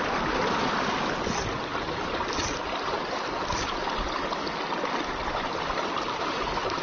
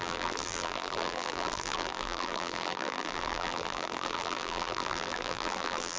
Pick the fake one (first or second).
second